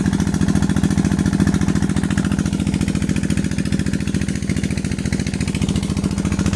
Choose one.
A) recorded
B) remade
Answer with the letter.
A